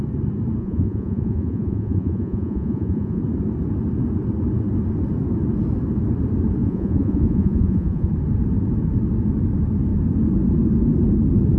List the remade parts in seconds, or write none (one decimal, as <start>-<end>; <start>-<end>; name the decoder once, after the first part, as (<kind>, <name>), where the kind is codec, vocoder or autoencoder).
0.6-3.2 (vocoder, Vocos); 6.6-8.1